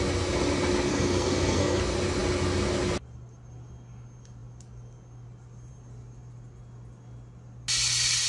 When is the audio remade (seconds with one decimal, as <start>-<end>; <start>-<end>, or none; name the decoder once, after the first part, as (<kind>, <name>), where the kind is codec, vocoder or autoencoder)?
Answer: 0.9-1.8 (codec, SNAC)